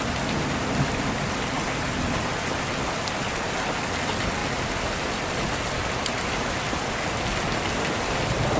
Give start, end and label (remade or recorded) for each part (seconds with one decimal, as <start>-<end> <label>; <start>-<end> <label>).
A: 0.0-8.6 recorded